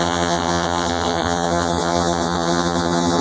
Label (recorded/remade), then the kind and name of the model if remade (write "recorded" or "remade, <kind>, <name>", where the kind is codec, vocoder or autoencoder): remade, vocoder, HiFi-GAN